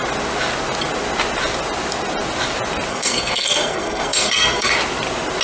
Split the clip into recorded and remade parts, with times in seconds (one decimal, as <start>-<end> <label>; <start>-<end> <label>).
0.0-2.9 recorded; 2.9-4.7 remade; 4.7-5.4 recorded